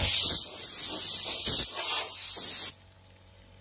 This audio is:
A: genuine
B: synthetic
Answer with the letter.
A